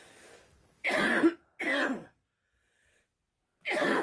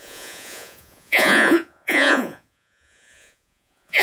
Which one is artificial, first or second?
second